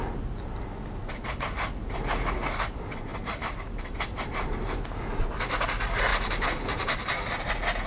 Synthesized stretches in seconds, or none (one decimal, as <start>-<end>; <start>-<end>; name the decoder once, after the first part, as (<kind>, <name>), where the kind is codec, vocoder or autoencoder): 3.1-4.8 (vocoder, BigVGAN v2); 6.1-7.5

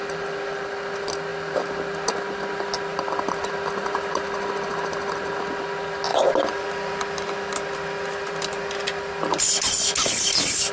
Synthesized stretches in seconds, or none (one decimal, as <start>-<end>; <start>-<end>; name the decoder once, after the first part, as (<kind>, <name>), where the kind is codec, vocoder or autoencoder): 6.1-9.4 (vocoder, BigVGAN v2)